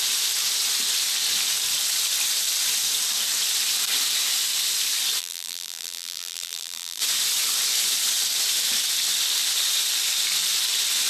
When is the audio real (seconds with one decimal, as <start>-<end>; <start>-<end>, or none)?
0.0-5.2; 7.0-11.1